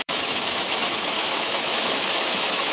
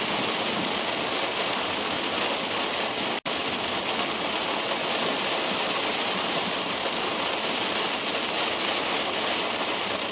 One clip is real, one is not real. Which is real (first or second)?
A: second